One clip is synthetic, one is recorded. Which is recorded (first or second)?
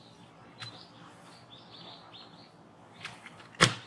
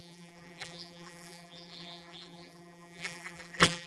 first